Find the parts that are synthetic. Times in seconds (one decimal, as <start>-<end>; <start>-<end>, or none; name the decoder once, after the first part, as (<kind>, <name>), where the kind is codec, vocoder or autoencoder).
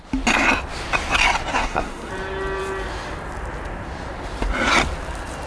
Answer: 1.5-2.1 (codec, SNAC)